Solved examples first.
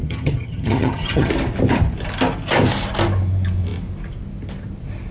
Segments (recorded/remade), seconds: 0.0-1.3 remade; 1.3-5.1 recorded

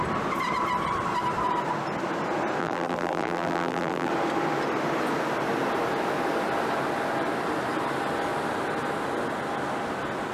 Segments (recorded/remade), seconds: 0.0-2.6 recorded; 2.6-4.1 remade; 4.1-10.3 recorded

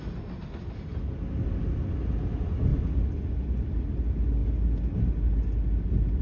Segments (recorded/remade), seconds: 0.0-6.2 recorded

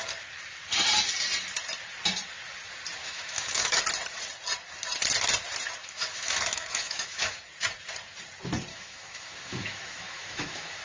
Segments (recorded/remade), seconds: 0.0-3.0 recorded; 3.0-3.8 remade; 3.8-5.8 recorded; 5.8-7.4 remade; 7.4-8.7 recorded; 8.7-10.8 remade

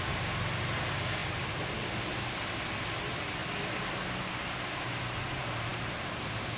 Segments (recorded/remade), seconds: 0.0-6.6 recorded

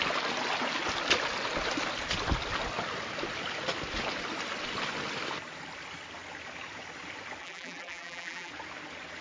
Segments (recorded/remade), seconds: 0.0-7.4 recorded; 7.4-8.5 remade; 8.5-9.2 recorded

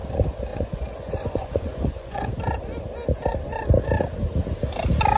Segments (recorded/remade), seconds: 0.0-0.5 recorded; 0.5-2.3 remade; 2.3-5.2 recorded